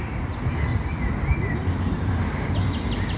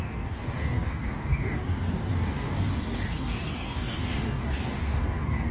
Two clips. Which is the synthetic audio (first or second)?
second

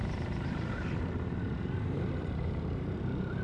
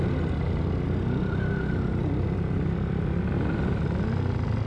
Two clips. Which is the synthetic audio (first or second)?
first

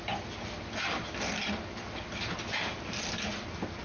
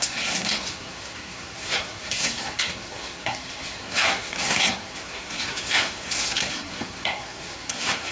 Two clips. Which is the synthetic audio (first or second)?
second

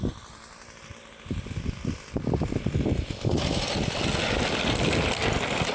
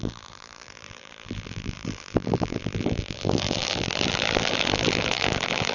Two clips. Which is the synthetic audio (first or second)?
second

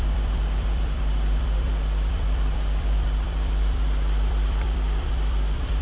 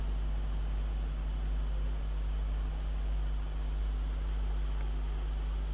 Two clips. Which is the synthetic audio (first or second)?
first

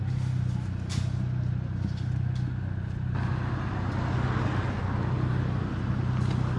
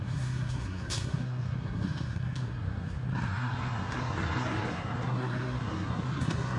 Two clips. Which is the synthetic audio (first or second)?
second